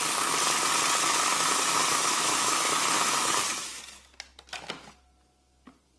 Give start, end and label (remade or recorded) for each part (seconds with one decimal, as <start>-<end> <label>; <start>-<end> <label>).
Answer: 0.0-1.3 recorded; 1.3-3.8 remade; 3.8-6.0 recorded